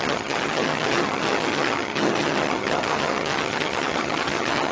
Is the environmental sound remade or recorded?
remade